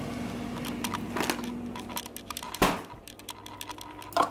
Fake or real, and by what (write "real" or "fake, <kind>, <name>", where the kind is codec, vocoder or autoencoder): real